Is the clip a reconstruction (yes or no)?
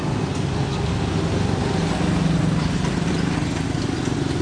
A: no